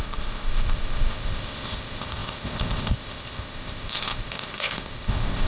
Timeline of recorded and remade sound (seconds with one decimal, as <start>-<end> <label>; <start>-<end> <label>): 0.0-5.5 remade